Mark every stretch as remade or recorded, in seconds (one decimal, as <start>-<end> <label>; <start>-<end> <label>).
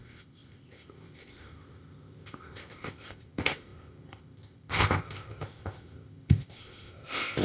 0.0-7.4 remade